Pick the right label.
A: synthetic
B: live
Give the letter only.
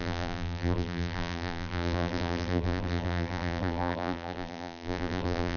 A